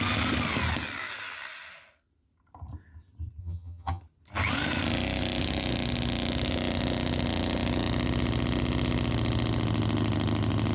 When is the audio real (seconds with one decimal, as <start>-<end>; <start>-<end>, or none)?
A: 0.0-3.4; 4.0-10.7